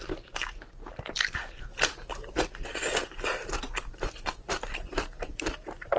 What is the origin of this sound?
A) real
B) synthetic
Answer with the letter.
B